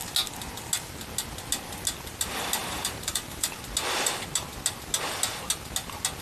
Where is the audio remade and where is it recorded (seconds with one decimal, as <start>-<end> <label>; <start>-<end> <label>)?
0.0-2.6 recorded; 2.6-3.6 remade; 3.6-6.2 recorded

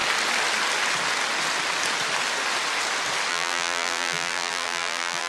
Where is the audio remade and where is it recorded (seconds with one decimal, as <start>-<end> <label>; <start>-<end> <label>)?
0.0-3.3 recorded; 3.3-5.3 remade

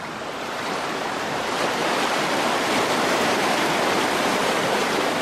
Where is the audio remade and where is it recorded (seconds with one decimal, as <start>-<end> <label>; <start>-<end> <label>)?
0.0-1.8 remade; 1.8-3.1 recorded; 3.1-3.7 remade; 3.7-4.2 recorded; 4.2-5.2 remade

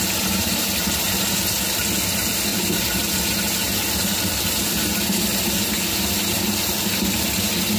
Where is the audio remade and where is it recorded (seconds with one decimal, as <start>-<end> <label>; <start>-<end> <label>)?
0.0-2.5 recorded; 2.5-3.3 remade; 3.3-7.8 recorded

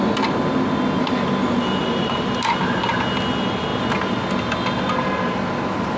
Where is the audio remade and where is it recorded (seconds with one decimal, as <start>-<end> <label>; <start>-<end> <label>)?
0.0-1.8 recorded; 1.8-2.9 remade; 2.9-6.0 recorded

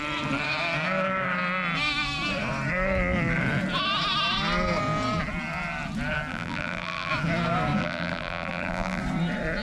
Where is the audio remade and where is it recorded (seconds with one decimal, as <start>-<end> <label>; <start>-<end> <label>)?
0.0-6.3 recorded; 6.3-7.1 remade; 7.1-7.8 recorded; 7.8-9.0 remade; 9.0-9.6 recorded